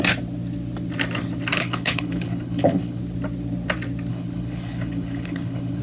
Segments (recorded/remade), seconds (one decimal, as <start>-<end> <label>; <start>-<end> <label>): 0.0-1.5 recorded; 1.5-3.0 remade; 3.0-4.1 recorded; 4.1-5.8 remade